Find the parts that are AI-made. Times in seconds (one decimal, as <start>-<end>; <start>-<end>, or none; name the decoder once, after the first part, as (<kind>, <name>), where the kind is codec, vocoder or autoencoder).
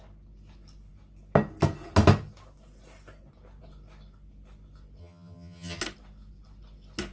5.0-5.8 (vocoder, HiFi-GAN)